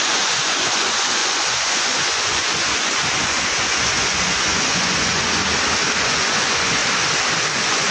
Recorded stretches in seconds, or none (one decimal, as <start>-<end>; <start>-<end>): 5.4-6.0; 6.8-7.5